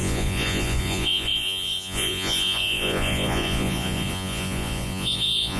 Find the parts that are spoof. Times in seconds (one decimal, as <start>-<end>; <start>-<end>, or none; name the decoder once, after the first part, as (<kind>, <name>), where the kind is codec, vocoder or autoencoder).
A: 0.0-5.6 (vocoder, Vocos)